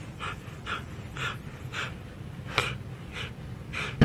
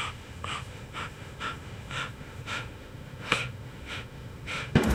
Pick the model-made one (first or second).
second